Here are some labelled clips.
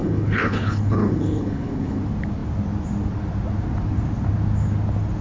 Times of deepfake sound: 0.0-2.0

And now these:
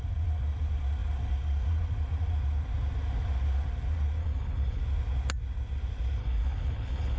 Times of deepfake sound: 4.2-4.8; 6.2-7.2

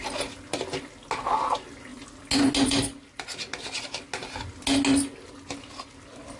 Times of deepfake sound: none

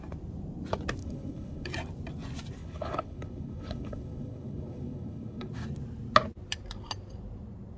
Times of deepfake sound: 1.0-1.7; 2.6-5.5